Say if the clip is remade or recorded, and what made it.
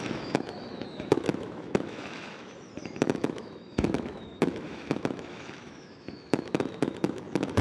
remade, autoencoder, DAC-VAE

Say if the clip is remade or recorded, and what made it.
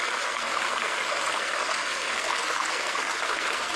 remade, codec, SNAC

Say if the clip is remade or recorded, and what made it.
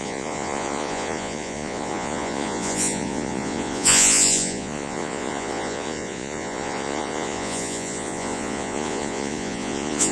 remade, vocoder, Vocos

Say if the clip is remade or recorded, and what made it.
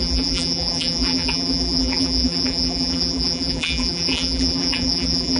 remade, vocoder, BigVGAN v2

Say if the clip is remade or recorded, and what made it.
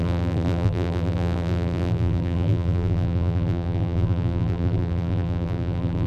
remade, vocoder, BigVGAN v2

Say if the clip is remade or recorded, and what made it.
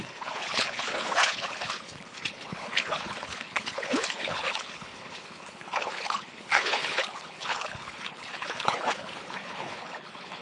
remade, codec, HILCodec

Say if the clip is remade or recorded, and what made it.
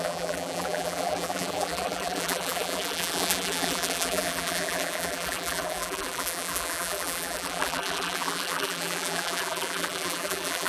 remade, vocoder, BigVGAN v2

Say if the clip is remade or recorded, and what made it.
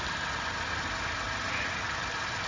recorded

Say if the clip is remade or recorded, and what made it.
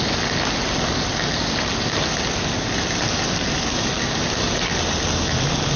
recorded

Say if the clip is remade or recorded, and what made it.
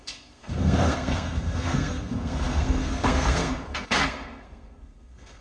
remade, codec, SNAC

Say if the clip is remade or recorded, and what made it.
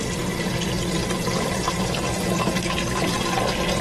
recorded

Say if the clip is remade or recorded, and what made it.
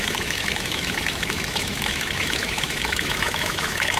remade, autoencoder, DAC-VAE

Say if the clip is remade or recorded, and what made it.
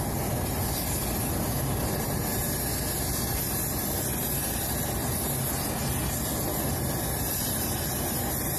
recorded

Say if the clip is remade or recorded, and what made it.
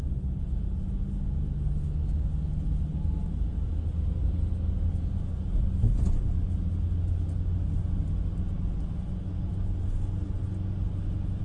recorded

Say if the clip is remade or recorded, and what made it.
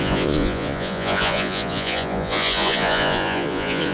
remade, vocoder, Vocos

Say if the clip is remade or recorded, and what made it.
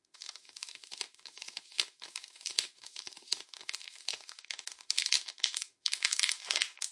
remade, autoencoder, DAC-VAE